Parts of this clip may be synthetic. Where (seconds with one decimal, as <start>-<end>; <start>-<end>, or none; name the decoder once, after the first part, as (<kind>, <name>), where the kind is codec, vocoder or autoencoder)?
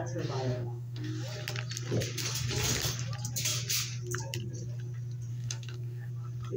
0.5-1.1 (codec, DAC); 5.3-6.1